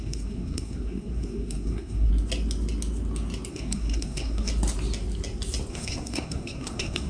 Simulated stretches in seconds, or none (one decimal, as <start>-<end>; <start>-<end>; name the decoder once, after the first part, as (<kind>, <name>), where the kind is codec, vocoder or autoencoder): 0.0-2.1 (codec, SNAC); 3.5-4.5; 5.7-7.1